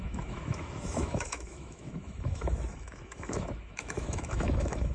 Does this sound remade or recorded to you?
remade